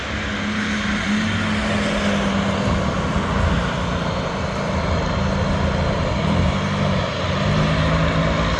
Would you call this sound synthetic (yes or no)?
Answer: no